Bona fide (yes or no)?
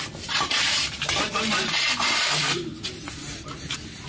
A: no